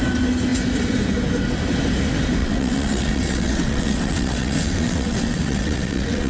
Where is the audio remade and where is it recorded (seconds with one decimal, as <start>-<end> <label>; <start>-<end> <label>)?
0.0-2.4 recorded; 2.4-6.3 remade